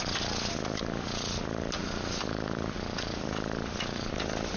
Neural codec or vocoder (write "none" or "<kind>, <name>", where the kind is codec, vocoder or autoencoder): none